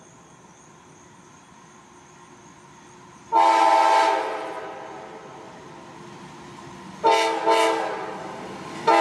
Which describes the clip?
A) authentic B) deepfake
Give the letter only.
A